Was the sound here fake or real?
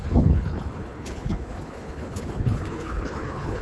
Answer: fake